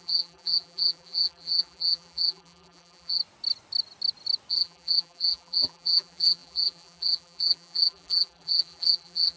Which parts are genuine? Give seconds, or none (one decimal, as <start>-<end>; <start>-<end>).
3.2-4.5